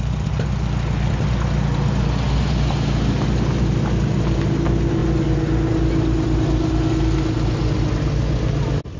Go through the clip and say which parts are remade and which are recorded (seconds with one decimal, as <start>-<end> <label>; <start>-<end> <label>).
0.0-9.0 recorded